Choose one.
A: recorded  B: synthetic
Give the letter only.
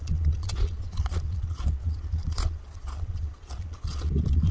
B